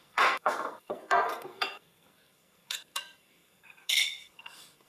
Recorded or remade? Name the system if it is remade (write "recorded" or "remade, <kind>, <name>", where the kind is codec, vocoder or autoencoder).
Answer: remade, codec, SNAC